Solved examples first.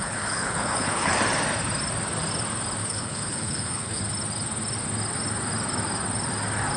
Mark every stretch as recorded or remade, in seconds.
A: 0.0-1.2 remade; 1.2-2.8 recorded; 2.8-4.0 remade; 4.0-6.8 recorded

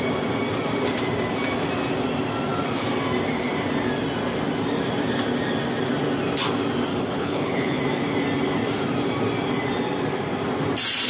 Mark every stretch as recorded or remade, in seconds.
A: 0.0-6.9 recorded; 6.9-7.8 remade; 7.8-11.1 recorded

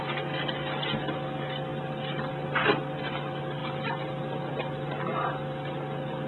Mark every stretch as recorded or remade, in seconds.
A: 0.0-6.3 recorded

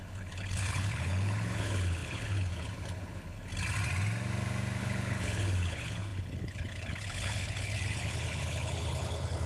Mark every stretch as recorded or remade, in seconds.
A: 0.0-3.5 remade; 3.5-4.8 recorded; 4.8-9.5 remade

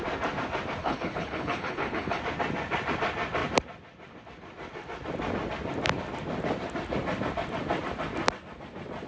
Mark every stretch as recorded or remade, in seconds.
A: 0.0-0.8 recorded; 0.8-2.2 remade; 2.2-9.1 recorded

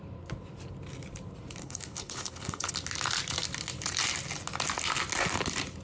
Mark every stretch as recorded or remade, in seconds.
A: 0.0-1.6 recorded; 1.6-2.7 remade; 2.7-5.8 recorded